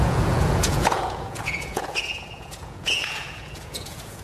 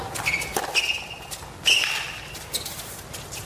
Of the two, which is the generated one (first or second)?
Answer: first